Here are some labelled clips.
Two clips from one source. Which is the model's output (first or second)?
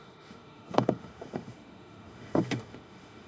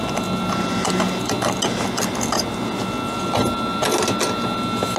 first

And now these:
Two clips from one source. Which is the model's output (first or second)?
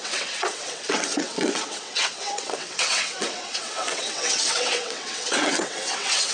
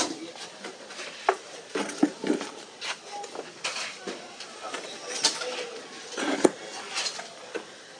first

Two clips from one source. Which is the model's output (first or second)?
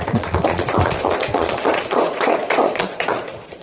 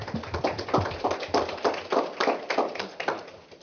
first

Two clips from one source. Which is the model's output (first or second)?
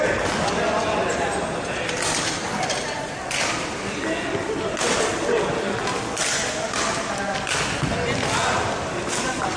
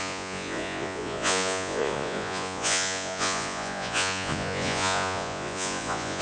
second